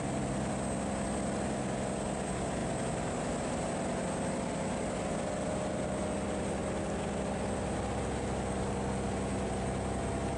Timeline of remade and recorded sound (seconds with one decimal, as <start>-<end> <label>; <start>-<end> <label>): 0.0-10.4 recorded